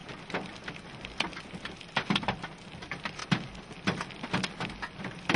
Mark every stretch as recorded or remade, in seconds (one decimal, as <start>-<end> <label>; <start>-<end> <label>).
0.0-0.7 recorded; 0.7-3.2 remade; 3.2-5.0 recorded; 5.0-5.4 remade